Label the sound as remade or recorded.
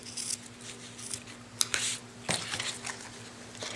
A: recorded